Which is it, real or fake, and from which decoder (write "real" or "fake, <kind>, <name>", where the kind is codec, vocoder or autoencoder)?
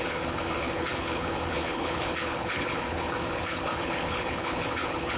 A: fake, codec, HILCodec